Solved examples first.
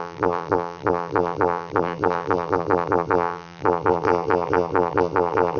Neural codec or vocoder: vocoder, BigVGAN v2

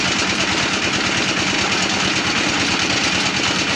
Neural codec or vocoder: none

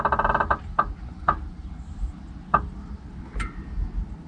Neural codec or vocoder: none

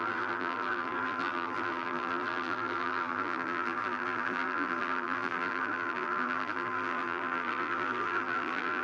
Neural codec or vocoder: vocoder, BigVGAN v2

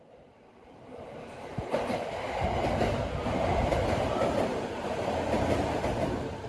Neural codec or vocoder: vocoder, BigVGAN v2